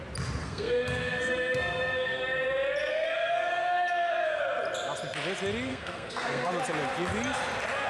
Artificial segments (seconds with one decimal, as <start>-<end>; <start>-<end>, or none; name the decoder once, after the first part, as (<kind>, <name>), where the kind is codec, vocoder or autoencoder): 0.4-2.2 (codec, SNAC); 2.9-4.4; 5.7-6.5